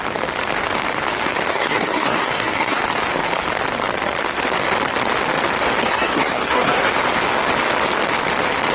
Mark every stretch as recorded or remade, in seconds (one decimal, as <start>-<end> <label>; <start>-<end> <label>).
0.0-1.5 recorded; 1.5-2.8 remade; 2.8-5.8 recorded; 5.8-6.9 remade; 6.9-8.7 recorded